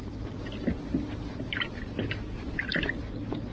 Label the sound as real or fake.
real